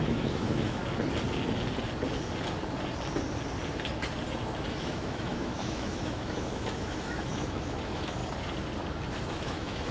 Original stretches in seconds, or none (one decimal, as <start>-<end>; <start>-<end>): 0.8-4.8; 8.2-9.3